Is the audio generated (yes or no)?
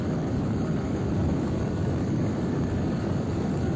yes